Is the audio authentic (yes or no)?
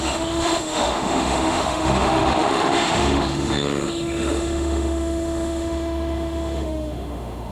no